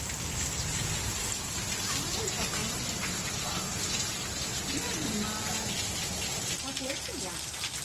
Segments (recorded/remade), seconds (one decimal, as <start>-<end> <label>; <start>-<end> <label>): 0.0-7.8 recorded